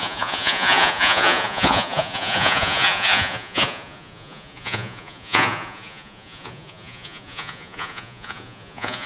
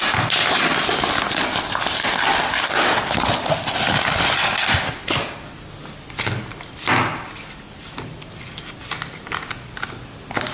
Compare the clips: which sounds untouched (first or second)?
second